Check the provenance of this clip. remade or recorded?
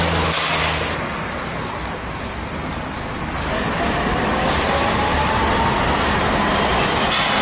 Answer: recorded